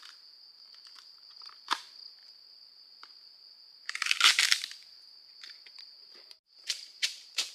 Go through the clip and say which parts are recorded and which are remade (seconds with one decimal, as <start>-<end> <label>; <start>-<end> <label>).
0.0-2.2 recorded; 2.2-3.9 remade; 3.9-6.0 recorded; 6.0-7.5 remade